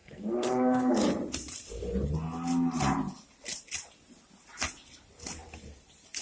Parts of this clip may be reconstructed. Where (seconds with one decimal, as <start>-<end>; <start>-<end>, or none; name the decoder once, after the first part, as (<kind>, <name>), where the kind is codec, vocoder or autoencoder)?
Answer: 0.0-0.9 (codec, SNAC)